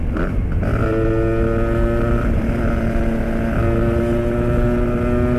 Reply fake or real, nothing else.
real